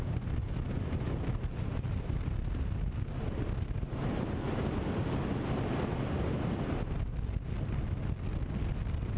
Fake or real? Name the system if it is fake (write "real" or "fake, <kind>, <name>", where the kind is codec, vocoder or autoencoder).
real